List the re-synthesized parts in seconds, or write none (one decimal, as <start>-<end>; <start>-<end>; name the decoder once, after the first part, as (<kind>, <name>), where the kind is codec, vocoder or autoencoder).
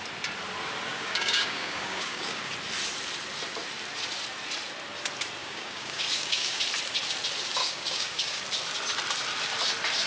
0.9-2.5 (codec, DAC); 5.4-6.6; 7.6-8.4